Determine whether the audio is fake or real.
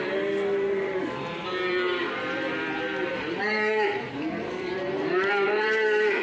fake